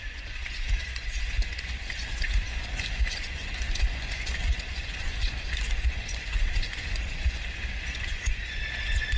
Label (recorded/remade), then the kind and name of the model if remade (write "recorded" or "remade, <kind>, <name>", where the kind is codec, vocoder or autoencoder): remade, vocoder, Vocos